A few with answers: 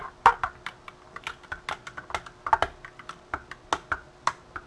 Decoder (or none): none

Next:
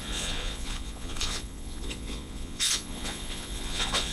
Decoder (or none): vocoder, Vocos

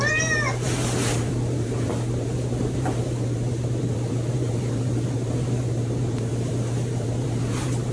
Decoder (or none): vocoder, BigVGAN v2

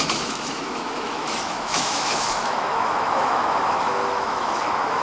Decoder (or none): autoencoder, DAC-VAE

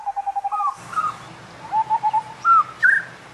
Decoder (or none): vocoder, BigVGAN v2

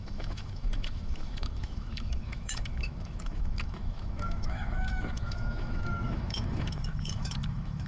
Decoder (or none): autoencoder, DAC-VAE